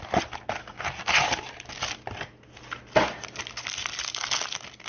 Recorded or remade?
recorded